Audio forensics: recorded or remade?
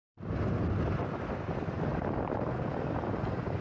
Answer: recorded